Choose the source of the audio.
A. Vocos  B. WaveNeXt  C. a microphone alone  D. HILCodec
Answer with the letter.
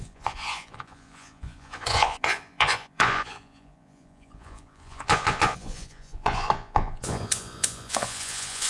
A